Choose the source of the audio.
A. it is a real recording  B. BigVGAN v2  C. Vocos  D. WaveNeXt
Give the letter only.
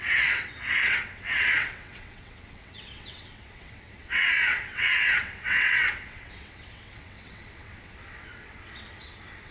D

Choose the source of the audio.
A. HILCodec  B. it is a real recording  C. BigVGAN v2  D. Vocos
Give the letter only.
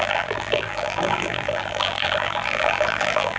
C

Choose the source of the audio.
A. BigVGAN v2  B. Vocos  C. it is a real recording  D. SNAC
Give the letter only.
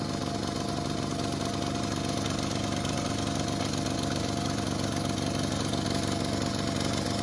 C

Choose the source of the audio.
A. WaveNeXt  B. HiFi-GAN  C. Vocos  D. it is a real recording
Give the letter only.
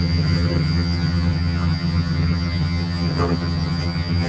B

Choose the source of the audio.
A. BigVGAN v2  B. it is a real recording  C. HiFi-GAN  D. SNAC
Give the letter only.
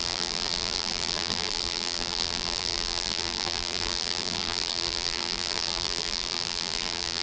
A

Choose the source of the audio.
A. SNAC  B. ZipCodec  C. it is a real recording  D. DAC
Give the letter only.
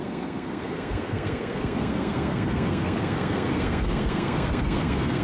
A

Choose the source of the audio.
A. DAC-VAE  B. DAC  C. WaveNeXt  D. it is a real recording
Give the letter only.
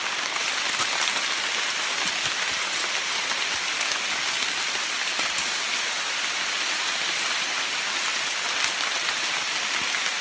D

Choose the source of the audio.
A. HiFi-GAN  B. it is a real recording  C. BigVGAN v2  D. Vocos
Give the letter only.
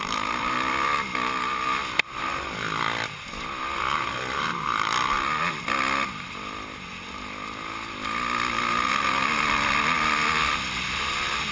B